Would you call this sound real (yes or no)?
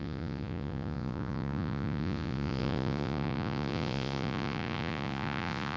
no